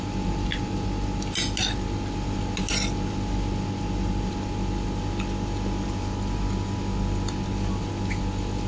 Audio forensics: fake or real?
real